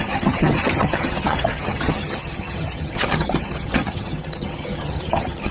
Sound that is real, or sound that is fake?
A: fake